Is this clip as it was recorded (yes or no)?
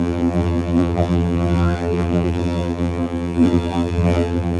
no